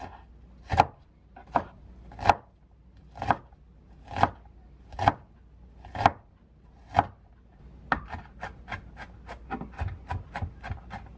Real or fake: real